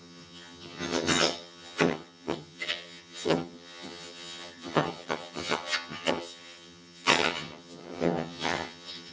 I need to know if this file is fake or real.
fake